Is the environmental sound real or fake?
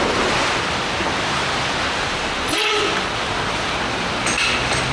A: real